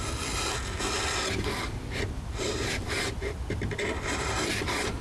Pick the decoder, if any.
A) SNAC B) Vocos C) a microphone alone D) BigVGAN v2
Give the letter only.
C